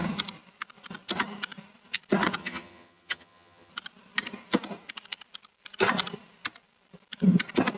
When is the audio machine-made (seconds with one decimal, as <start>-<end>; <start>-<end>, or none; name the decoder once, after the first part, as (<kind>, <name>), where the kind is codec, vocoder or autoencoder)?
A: 2.4-3.7 (vocoder, HiFi-GAN)